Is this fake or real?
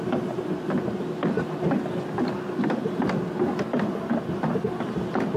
real